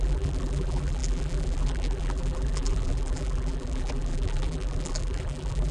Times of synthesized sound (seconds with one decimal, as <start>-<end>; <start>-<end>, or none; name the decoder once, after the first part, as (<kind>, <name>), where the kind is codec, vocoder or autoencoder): 0.0-5.7 (vocoder, BigVGAN v2)